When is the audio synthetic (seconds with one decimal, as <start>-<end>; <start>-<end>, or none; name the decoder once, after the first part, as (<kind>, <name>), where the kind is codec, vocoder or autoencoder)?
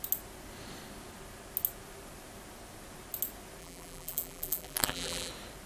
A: 3.6-5.3 (vocoder, BigVGAN v2)